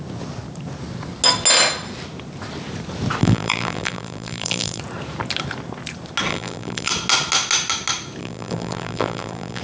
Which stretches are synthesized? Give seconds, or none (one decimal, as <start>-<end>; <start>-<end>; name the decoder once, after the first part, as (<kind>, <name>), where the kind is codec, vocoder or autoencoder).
3.2-4.8 (vocoder, BigVGAN v2); 6.3-6.9; 8.2-9.6